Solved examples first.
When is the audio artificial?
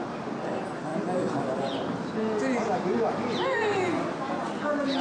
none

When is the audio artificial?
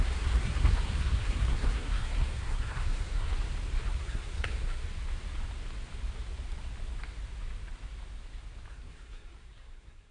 0.0-3.3 (codec, SNAC); 3.9-4.8; 8.7-10.1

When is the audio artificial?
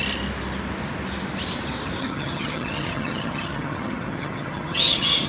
2.0-5.3 (vocoder, HiFi-GAN)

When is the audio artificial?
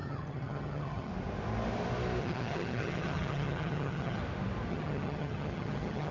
0.0-1.1 (vocoder, HiFi-GAN); 2.2-4.2; 4.7-6.1